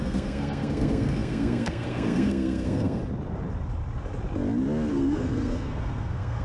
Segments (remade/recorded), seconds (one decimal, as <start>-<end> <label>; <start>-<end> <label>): 0.0-3.0 remade; 3.0-4.9 recorded; 4.9-6.4 remade